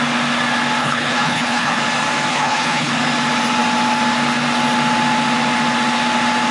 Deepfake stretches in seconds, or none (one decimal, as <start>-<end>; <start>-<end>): 0.8-1.8; 2.3-2.9